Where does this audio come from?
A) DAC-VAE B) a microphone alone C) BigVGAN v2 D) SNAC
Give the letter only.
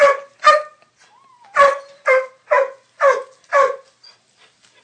B